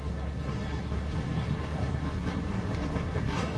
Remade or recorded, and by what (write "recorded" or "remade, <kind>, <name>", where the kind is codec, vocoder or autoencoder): remade, codec, SNAC